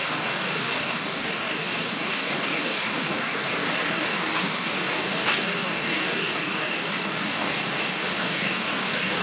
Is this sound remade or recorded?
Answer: remade